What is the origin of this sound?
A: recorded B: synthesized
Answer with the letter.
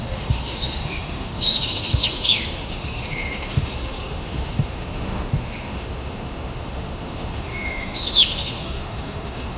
B